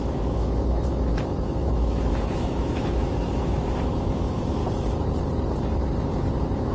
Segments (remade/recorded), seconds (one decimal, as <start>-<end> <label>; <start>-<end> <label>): 0.0-4.6 remade; 4.6-6.3 recorded; 6.3-6.7 remade

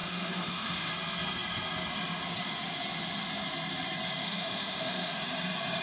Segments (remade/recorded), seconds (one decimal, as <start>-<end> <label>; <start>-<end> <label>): 0.0-0.9 remade; 0.9-4.2 recorded; 4.2-5.2 remade; 5.2-5.8 recorded

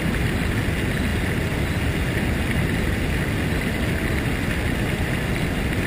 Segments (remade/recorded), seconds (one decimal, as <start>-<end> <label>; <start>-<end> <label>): 0.0-5.9 recorded

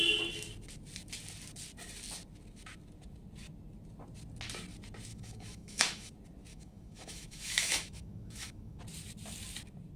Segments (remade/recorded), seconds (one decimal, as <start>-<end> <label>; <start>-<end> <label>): 0.0-5.1 recorded; 5.1-6.1 remade; 6.1-6.5 recorded; 6.5-8.8 remade; 8.8-10.0 recorded

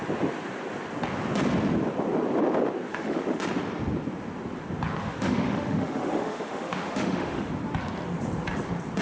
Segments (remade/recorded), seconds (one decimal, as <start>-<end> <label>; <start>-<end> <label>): 0.0-2.9 recorded; 2.9-3.4 remade; 3.4-5.0 recorded; 5.0-7.5 remade; 7.5-9.0 recorded

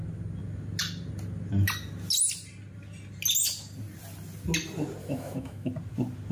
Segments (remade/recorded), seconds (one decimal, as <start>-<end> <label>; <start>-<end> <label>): 0.0-5.0 recorded; 5.0-5.7 remade; 5.7-6.3 recorded